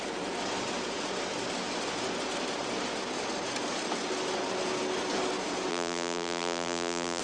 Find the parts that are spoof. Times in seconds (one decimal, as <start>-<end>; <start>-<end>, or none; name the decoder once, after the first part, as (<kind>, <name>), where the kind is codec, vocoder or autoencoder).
5.7-7.2 (vocoder, BigVGAN v2)